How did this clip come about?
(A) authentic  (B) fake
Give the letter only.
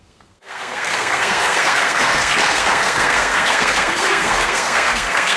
B